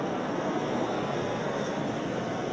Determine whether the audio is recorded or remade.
remade